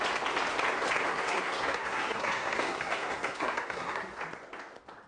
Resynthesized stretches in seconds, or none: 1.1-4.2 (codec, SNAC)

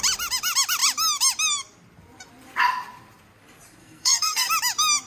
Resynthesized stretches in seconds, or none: 3.8-4.5 (codec, SNAC)

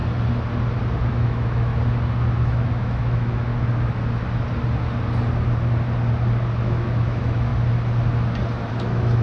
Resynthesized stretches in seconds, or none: 1.1-1.7 (autoencoder, DAC-VAE); 2.4-3.5; 6.6-7.5; 8.7-9.2